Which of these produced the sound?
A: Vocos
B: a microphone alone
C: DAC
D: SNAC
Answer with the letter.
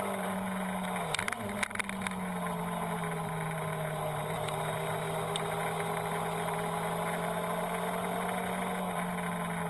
B